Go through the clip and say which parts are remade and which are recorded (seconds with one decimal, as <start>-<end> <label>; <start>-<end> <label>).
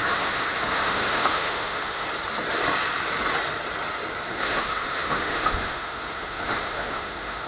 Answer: 0.0-2.1 remade; 2.1-4.3 recorded; 4.3-7.5 remade